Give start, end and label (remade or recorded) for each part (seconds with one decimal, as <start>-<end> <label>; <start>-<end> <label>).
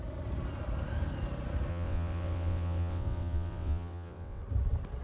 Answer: 0.0-1.7 recorded; 1.7-4.4 remade; 4.4-5.0 recorded